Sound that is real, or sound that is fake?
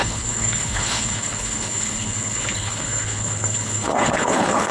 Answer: fake